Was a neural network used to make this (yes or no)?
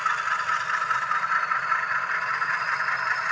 no